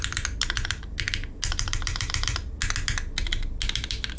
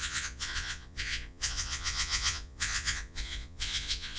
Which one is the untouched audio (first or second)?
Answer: first